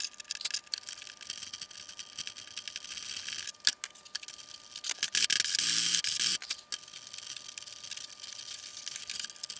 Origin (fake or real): real